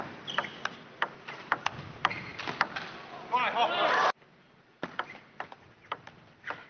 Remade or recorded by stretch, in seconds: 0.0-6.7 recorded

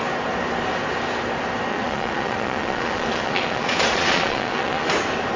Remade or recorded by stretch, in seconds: 0.0-1.7 recorded; 1.7-4.9 remade; 4.9-5.4 recorded

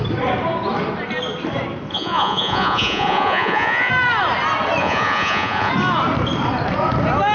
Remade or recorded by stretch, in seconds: 0.0-1.9 recorded; 1.9-3.9 remade; 3.9-4.8 recorded; 4.8-5.7 remade; 5.7-7.3 recorded

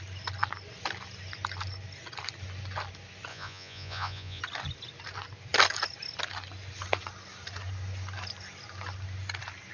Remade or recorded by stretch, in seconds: 0.0-3.3 recorded; 3.3-4.4 remade; 4.4-9.7 recorded

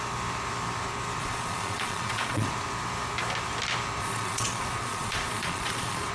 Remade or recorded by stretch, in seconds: 0.0-1.2 recorded; 1.2-2.5 remade; 2.5-4.0 recorded; 4.0-6.1 remade

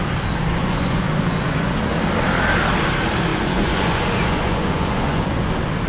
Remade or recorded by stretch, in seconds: 0.0-0.5 recorded; 0.5-1.9 remade; 1.9-3.3 recorded; 3.3-5.5 remade; 5.5-5.9 recorded

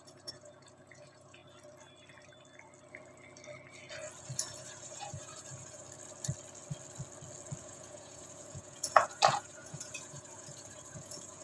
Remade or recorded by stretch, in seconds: 0.0-1.4 remade; 1.4-4.2 recorded; 4.2-5.8 remade; 5.8-7.6 recorded; 7.6-11.4 remade

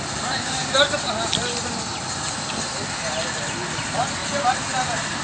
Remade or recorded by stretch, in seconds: 0.0-5.2 recorded